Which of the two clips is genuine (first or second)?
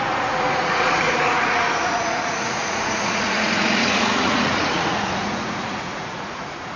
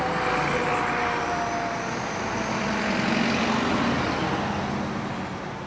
second